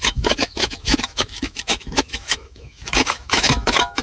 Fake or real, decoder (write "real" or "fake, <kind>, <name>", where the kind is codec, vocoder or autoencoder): fake, autoencoder, DAC-VAE